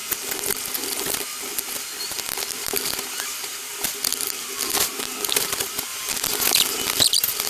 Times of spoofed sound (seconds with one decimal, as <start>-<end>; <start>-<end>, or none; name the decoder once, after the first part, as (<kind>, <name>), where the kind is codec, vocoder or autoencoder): 0.0-5.9 (vocoder, BigVGAN v2); 7.0-7.5